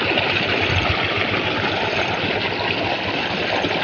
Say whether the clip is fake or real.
real